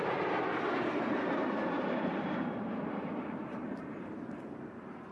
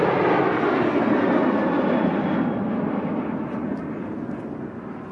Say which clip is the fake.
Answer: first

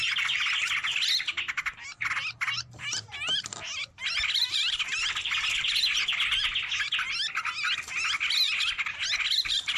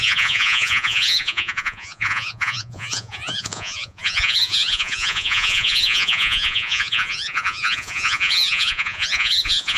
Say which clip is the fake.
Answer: second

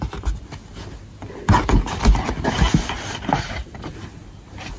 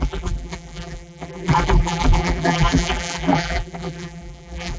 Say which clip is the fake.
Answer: second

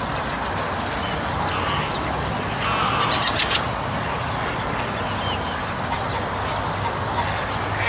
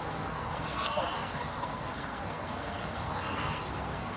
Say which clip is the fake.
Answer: second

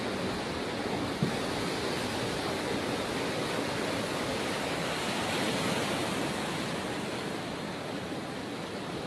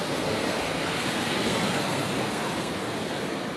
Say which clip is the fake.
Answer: second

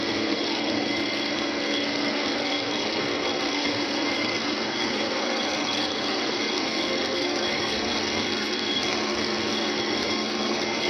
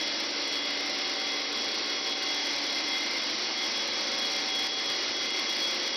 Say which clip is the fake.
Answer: first